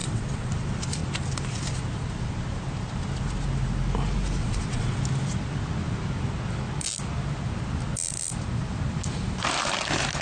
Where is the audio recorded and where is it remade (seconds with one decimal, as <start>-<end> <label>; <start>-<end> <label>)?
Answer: 0.0-0.5 remade; 0.5-4.4 recorded; 4.4-5.0 remade; 5.0-10.2 recorded